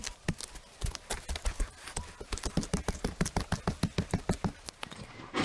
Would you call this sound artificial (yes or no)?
no